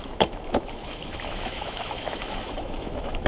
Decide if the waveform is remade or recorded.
remade